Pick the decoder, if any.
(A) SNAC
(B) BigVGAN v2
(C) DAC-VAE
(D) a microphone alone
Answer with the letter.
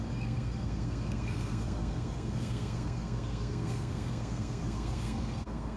A